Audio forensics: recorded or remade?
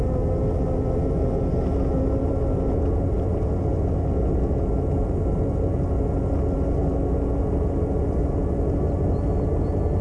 recorded